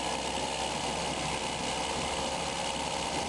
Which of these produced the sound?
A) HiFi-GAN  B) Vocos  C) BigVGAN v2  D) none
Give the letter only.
D